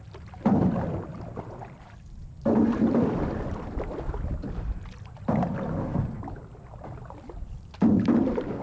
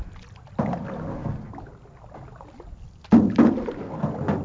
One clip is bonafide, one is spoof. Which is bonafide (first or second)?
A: second